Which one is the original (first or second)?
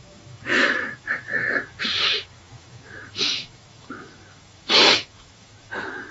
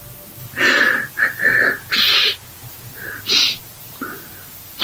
second